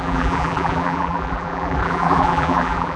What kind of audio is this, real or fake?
fake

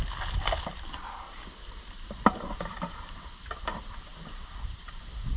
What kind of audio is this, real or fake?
real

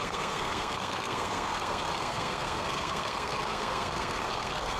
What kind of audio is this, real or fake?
fake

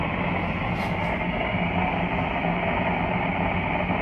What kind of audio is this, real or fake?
real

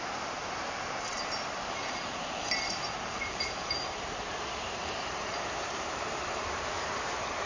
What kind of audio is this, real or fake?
fake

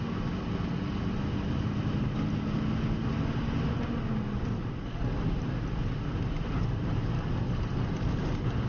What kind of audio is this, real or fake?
real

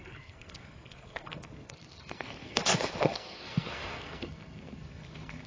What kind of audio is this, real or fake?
fake